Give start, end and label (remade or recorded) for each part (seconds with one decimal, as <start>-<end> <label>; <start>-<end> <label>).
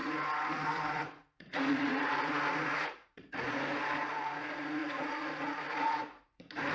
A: 0.0-6.7 remade